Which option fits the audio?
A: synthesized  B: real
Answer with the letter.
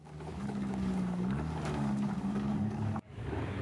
A